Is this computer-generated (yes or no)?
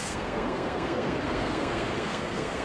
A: yes